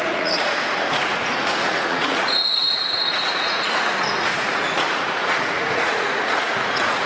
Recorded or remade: remade